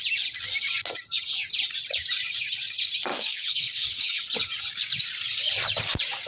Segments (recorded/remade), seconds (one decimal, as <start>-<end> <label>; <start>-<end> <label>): 0.0-3.1 recorded; 3.1-4.2 remade; 4.2-6.3 recorded